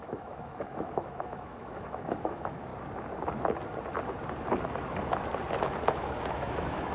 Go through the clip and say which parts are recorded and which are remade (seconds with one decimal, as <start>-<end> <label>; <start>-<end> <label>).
0.0-2.7 remade; 2.7-5.9 recorded; 5.9-6.9 remade

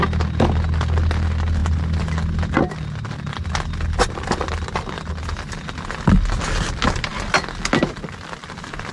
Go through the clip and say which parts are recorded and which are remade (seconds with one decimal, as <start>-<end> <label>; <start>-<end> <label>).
0.0-8.9 recorded

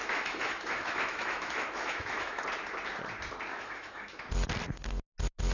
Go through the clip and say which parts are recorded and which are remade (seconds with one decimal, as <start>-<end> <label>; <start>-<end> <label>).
0.0-2.4 remade; 2.4-3.5 recorded; 3.5-4.2 remade; 4.2-5.5 recorded

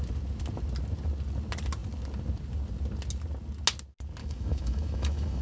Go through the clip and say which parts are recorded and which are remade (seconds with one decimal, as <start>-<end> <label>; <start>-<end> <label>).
0.0-4.2 recorded; 4.2-5.4 remade

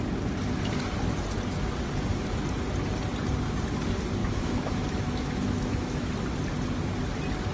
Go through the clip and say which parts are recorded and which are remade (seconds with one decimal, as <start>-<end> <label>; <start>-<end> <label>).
0.0-4.2 recorded; 4.2-6.1 remade; 6.1-7.5 recorded

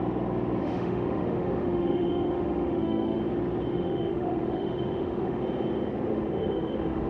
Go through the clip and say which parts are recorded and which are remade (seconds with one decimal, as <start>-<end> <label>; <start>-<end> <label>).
0.0-0.6 recorded; 0.6-3.2 remade; 3.2-3.7 recorded; 3.7-5.4 remade; 5.4-6.1 recorded; 6.1-7.1 remade

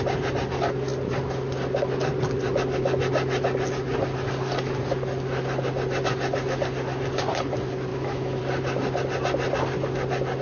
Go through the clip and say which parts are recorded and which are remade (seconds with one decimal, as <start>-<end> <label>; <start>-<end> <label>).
0.0-7.9 recorded; 7.9-8.4 remade; 8.4-10.4 recorded

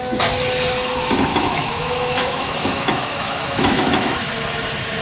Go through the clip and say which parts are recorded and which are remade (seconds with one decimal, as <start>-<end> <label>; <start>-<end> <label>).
0.0-1.3 recorded; 1.3-4.3 remade; 4.3-5.0 recorded